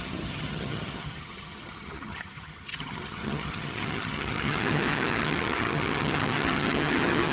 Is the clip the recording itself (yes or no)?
no